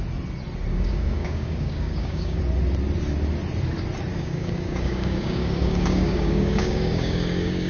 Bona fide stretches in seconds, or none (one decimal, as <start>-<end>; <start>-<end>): 0.0-0.7; 2.4-4.1